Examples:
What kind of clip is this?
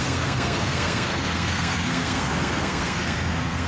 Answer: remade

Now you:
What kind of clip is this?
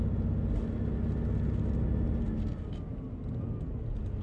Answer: recorded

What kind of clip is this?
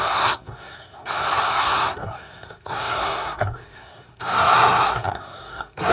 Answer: remade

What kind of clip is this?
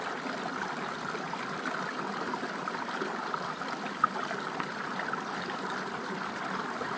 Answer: recorded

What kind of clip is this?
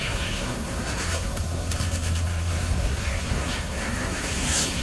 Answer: remade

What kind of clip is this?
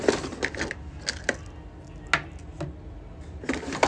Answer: recorded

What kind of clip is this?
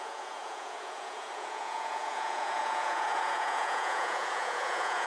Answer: remade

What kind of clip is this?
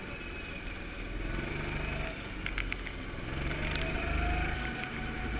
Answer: recorded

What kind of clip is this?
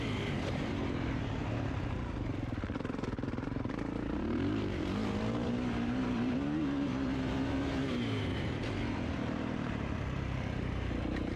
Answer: remade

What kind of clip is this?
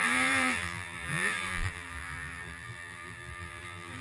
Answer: remade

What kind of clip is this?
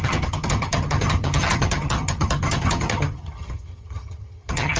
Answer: remade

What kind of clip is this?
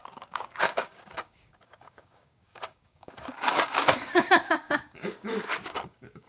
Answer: remade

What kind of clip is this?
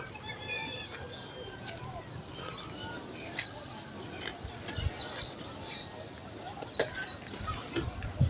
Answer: recorded